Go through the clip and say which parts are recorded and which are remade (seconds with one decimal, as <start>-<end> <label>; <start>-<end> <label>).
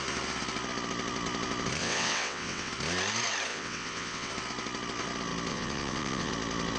0.0-1.8 recorded; 1.8-2.7 remade; 2.7-3.5 recorded; 3.5-4.3 remade; 4.3-5.5 recorded; 5.5-6.3 remade; 6.3-6.8 recorded